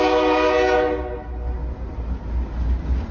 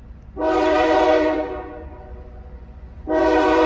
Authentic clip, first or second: first